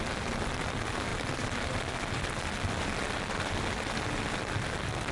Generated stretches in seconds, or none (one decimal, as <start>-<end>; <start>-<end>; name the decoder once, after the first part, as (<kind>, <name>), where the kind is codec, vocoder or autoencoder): none